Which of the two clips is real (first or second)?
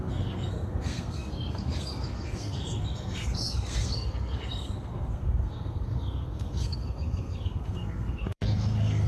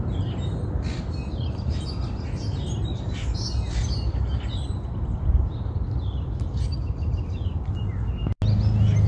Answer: second